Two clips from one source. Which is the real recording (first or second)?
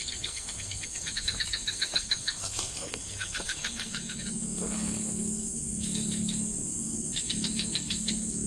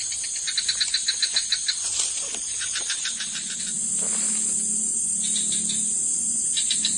second